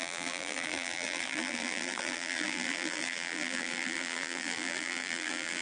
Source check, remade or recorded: remade